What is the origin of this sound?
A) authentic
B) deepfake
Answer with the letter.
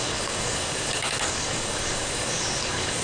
B